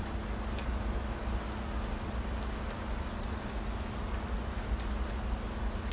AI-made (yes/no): no